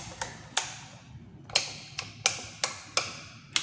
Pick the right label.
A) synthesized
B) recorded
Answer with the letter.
B